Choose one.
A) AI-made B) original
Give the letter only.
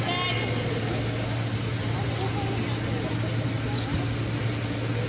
B